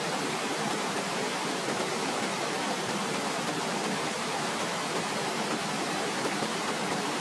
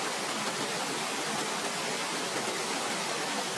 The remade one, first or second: first